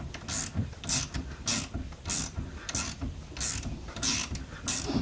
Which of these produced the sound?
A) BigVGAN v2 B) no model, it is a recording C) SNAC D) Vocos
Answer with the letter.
B